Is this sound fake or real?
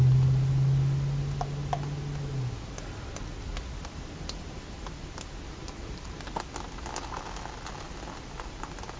real